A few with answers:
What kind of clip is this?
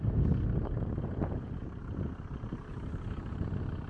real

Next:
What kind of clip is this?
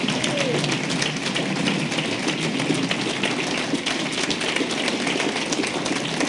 real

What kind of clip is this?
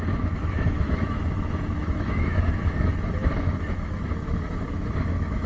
fake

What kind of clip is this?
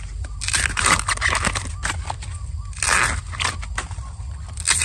real